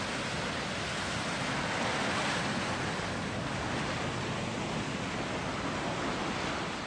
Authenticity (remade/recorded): recorded